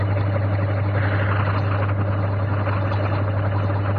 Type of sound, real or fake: real